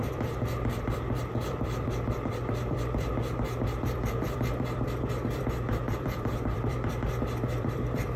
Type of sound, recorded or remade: remade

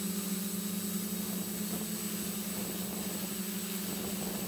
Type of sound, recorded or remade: recorded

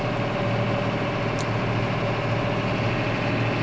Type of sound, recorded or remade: recorded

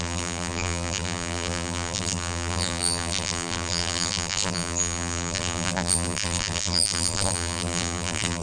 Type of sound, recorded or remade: remade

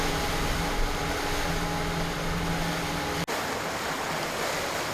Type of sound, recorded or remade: recorded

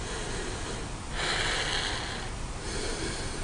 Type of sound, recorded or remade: recorded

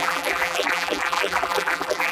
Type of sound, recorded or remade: remade